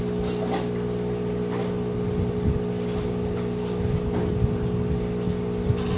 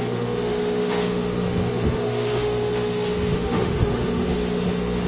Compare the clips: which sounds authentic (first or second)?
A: first